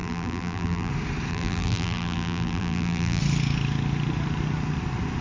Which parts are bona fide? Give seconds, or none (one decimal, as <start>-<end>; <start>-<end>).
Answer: 0.9-1.3; 3.2-5.2